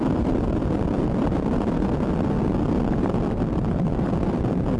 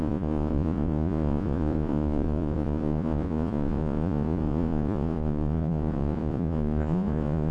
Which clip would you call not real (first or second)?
second